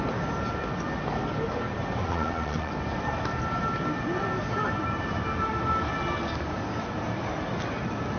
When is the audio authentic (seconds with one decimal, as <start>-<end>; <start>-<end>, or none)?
0.0-2.0; 2.7-8.2